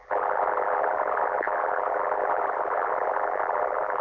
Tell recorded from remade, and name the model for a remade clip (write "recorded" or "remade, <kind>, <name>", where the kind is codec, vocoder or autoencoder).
remade, vocoder, BigVGAN v2